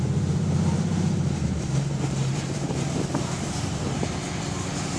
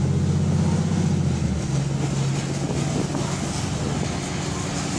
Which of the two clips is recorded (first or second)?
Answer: second